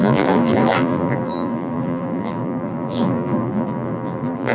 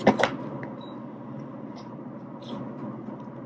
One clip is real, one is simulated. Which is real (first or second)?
second